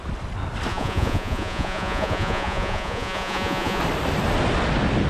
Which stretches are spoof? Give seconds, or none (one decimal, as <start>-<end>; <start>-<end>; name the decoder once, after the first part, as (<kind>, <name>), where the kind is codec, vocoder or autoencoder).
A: 0.7-3.8 (vocoder, Vocos)